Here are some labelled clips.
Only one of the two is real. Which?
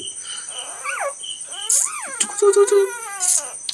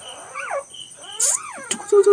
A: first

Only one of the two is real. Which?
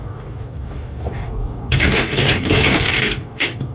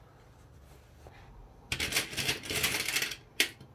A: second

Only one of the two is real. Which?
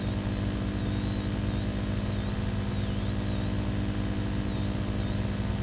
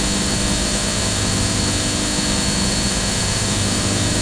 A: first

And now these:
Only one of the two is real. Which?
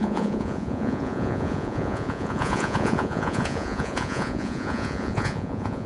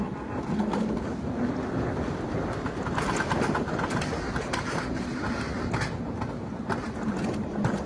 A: second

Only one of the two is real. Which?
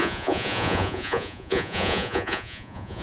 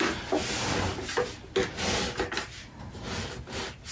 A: second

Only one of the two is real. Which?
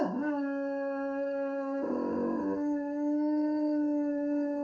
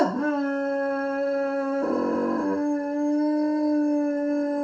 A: second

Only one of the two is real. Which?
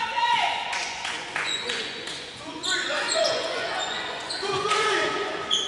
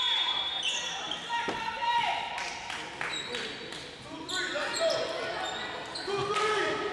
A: second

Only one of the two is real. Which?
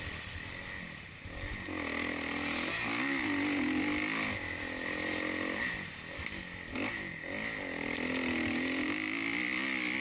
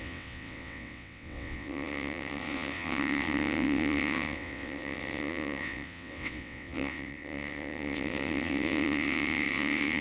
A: first